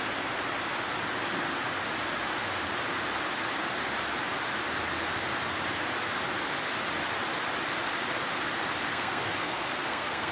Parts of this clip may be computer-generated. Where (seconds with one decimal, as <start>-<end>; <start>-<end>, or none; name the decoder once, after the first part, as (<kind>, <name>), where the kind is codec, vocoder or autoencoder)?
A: 8.9-10.3 (codec, SNAC)